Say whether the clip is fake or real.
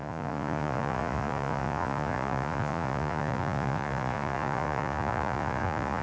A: fake